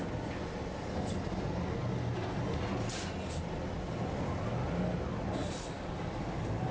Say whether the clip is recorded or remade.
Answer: recorded